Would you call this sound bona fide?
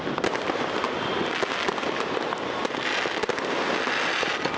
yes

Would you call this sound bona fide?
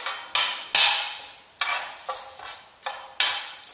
yes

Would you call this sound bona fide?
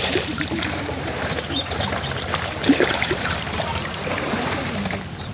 no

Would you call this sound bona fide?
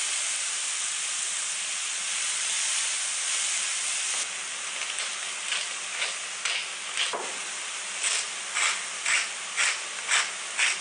yes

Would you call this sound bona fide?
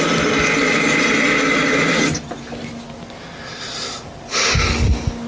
yes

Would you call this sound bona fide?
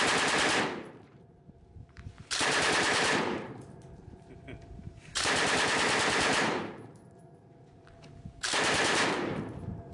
no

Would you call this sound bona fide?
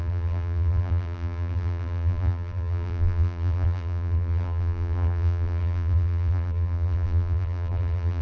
no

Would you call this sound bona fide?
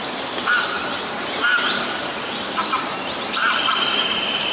no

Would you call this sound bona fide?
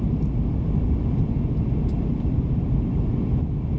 no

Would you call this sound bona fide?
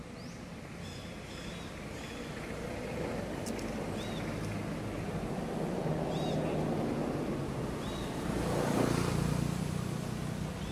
yes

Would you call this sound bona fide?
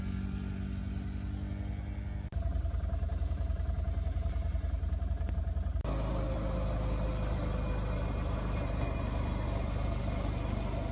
yes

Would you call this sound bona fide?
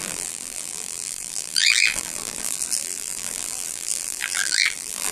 no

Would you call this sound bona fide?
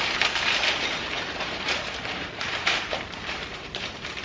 no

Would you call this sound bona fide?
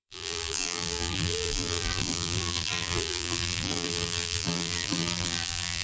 no